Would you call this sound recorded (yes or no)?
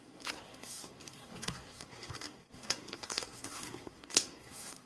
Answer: no